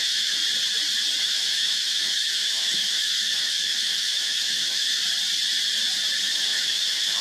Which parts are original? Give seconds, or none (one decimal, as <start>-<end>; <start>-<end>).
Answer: 0.4-1.2; 5.0-6.2